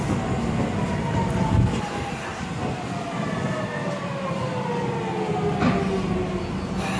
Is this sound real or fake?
real